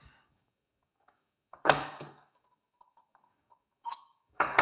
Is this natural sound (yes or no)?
no